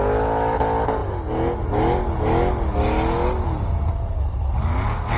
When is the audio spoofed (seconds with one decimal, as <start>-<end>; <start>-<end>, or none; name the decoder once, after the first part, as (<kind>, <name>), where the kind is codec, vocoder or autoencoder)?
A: none